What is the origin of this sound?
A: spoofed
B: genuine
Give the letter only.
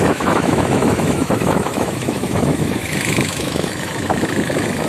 A